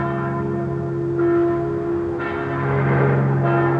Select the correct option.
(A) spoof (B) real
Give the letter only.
B